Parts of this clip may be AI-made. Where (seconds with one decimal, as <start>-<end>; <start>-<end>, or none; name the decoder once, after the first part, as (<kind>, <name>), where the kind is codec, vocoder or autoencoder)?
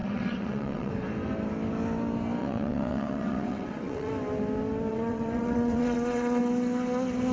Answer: 0.0-0.9 (vocoder, WaveNeXt); 2.4-4.1; 4.9-6.4